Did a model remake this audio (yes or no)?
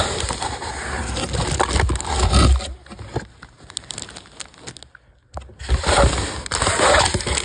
no